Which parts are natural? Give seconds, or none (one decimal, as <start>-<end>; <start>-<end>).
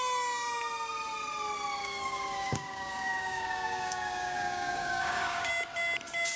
0.0-1.8; 5.5-6.4